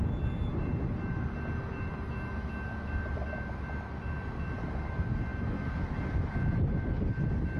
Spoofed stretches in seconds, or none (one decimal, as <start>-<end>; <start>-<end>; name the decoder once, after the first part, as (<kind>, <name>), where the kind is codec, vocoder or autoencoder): none